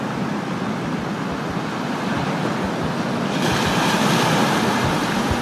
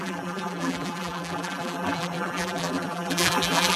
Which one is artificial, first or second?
second